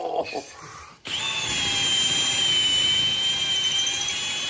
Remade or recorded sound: recorded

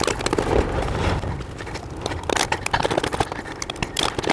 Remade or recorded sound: recorded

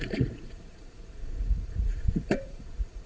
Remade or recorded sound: remade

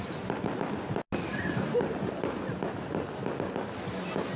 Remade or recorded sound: recorded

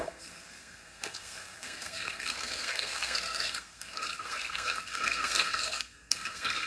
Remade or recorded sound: remade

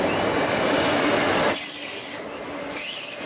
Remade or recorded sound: recorded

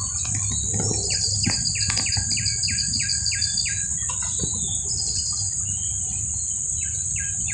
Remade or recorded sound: recorded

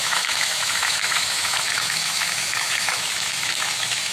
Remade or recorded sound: remade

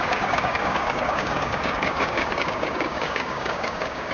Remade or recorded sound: remade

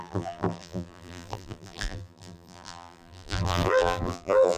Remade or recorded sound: remade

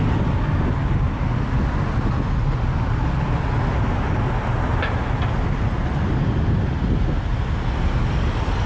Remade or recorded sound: recorded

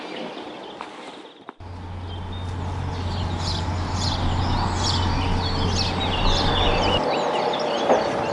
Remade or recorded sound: recorded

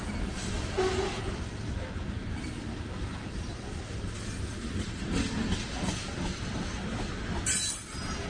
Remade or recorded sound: recorded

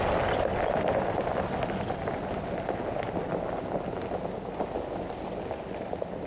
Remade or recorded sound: recorded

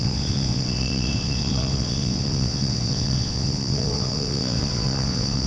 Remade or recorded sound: remade